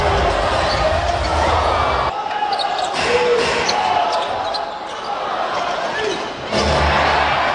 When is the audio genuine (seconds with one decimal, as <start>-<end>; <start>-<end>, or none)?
0.0-1.3; 1.9-7.5